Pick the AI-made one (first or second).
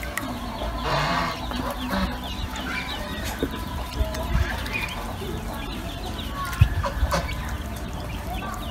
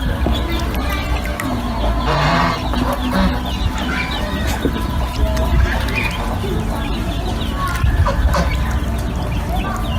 first